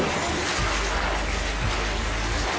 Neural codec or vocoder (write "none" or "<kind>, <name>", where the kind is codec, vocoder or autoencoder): none